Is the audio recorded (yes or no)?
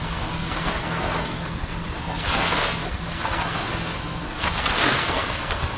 no